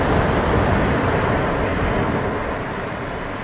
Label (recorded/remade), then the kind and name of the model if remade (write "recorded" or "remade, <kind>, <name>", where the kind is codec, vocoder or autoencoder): recorded